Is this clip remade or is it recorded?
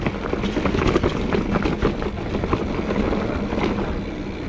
recorded